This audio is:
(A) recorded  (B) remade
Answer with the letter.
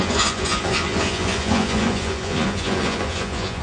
B